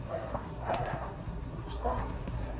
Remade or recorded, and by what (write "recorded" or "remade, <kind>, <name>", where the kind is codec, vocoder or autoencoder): remade, codec, SNAC